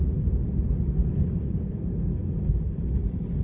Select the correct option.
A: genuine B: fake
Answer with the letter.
A